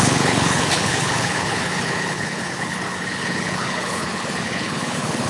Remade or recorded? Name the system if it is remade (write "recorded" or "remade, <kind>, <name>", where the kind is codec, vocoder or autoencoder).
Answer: remade, codec, HILCodec